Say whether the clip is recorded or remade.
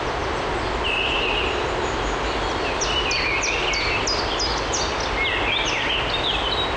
recorded